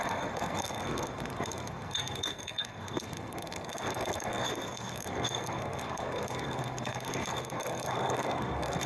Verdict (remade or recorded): remade